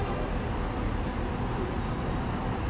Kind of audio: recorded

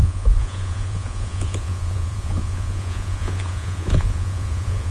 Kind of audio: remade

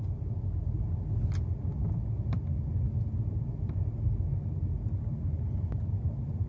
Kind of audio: recorded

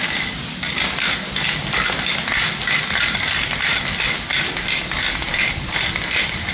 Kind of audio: recorded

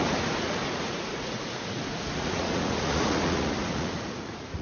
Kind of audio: remade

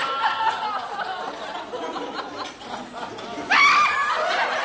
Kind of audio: recorded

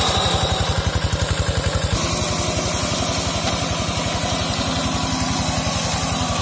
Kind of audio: recorded